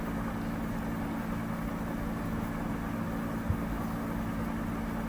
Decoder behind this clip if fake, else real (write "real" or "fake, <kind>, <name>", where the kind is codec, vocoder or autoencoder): real